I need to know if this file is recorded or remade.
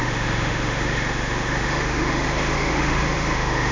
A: remade